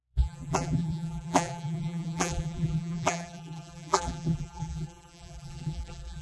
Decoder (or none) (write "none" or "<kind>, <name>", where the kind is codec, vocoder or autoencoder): vocoder, BigVGAN v2